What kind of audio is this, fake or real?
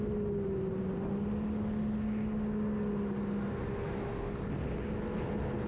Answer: real